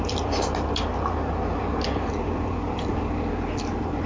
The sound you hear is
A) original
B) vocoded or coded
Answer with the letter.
A